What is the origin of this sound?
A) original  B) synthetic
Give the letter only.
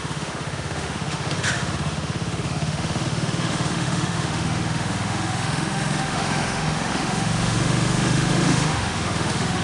B